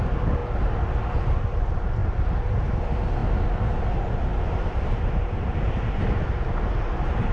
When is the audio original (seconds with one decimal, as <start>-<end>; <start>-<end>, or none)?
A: 0.0-2.0; 2.6-4.3; 6.0-7.3